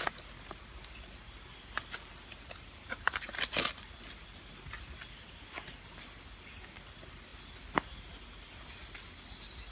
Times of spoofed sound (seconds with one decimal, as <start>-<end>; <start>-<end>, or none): none